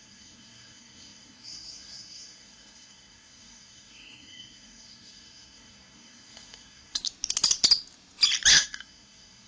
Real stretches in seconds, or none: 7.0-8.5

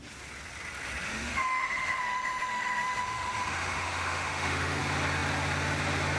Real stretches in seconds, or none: 0.0-1.1; 4.8-6.2

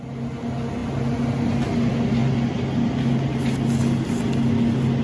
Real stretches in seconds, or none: 0.0-5.0

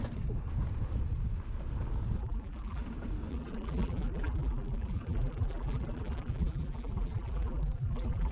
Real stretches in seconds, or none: 0.0-2.2; 2.8-3.3